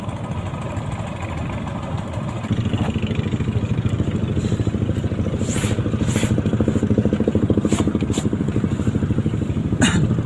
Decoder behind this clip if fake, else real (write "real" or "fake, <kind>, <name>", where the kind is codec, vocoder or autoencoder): real